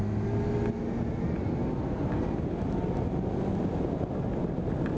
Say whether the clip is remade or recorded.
recorded